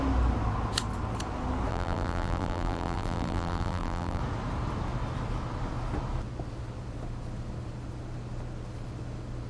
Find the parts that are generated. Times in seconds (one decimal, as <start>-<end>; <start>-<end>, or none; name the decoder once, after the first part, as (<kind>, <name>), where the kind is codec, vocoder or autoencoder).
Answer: 1.7-4.2 (vocoder, BigVGAN v2)